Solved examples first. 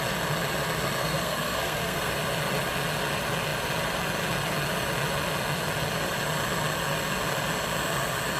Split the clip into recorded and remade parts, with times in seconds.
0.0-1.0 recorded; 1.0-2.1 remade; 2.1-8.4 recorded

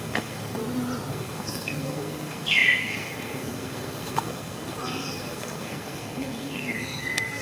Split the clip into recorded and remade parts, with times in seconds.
0.0-0.6 remade; 0.6-1.1 recorded; 1.1-7.4 remade

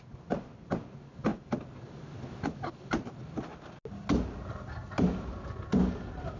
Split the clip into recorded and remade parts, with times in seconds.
0.0-6.4 recorded